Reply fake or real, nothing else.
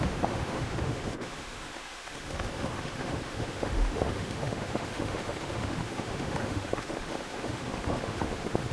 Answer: fake